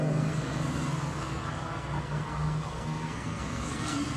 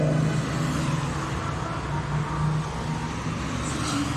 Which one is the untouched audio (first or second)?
second